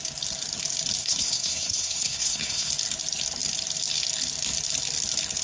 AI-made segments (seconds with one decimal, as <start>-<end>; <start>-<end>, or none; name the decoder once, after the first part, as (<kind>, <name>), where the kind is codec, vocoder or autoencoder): 1.0-2.7 (codec, SNAC)